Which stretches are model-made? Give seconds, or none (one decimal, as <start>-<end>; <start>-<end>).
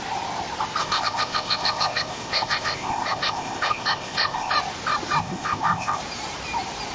0.8-4.5; 5.2-6.0